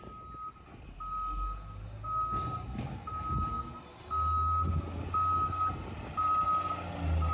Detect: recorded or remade recorded